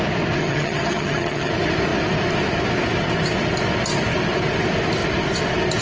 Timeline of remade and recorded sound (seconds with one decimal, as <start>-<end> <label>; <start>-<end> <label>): 0.0-0.4 recorded; 0.4-1.5 remade; 1.5-5.8 recorded